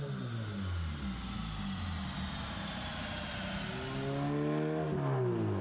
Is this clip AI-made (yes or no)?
no